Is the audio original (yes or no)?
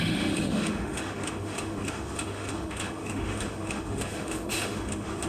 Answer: no